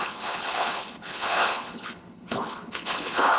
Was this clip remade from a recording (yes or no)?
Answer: yes